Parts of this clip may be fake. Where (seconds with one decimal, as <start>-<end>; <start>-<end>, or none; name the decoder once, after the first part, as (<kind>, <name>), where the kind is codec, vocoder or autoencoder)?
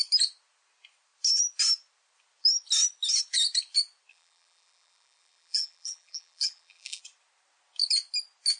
4.1-7.0 (vocoder, BigVGAN v2)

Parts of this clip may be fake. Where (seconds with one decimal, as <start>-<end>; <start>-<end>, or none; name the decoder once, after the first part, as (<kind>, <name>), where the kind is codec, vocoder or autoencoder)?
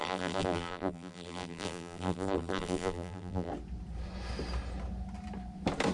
0.0-3.5 (vocoder, BigVGAN v2)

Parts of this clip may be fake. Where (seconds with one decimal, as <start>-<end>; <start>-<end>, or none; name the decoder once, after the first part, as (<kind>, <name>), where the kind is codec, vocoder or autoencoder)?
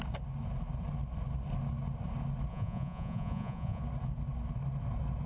2.5-3.8 (vocoder, Vocos)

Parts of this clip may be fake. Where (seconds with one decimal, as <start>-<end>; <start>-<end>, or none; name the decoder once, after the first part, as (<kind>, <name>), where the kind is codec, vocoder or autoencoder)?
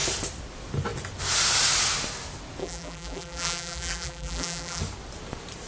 2.6-4.8 (vocoder, BigVGAN v2)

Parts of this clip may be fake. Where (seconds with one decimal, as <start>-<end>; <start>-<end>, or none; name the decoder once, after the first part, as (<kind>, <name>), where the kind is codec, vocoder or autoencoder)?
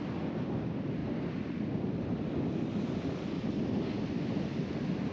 none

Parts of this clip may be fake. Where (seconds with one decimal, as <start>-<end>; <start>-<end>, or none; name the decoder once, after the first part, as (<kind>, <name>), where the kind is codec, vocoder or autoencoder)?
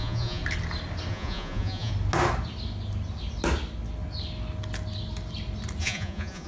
0.0-0.4 (vocoder, Vocos); 1.1-1.9; 5.8-6.5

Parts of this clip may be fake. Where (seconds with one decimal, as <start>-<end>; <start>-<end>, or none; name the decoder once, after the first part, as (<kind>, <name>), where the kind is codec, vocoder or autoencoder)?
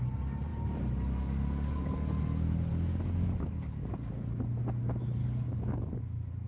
0.5-2.2 (codec, DAC); 2.7-4.1; 5.2-6.0